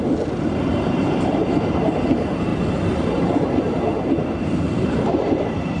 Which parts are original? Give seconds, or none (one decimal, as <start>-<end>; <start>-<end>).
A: 2.5-4.4